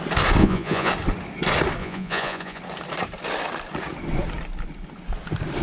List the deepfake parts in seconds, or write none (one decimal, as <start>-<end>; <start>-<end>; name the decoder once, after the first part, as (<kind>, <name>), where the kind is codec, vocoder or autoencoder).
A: 0.4-0.9 (vocoder, Vocos); 1.8-2.6